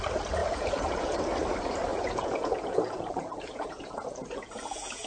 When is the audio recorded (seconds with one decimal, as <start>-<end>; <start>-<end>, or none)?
0.0-0.4; 1.2-1.9